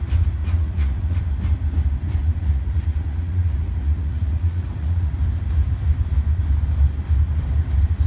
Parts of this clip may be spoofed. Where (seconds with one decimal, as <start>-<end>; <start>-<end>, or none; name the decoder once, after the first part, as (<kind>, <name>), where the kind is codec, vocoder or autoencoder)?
0.4-1.2 (vocoder, Vocos); 2.2-5.1